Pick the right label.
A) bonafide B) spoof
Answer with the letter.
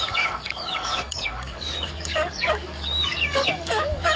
B